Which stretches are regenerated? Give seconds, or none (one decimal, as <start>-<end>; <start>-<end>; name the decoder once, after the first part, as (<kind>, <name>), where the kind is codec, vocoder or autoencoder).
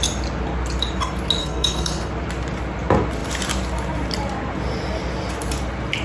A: 1.4-2.1 (codec, SNAC)